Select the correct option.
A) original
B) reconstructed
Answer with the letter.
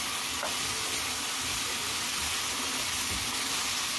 A